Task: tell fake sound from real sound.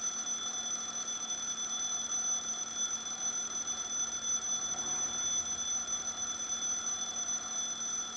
real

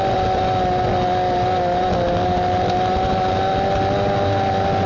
real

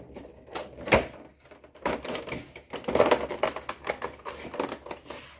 real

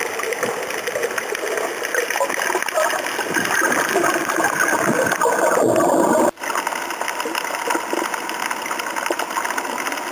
real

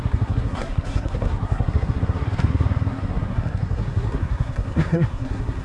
fake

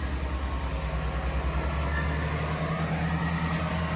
real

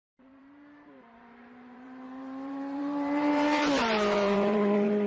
fake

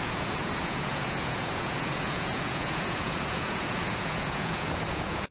fake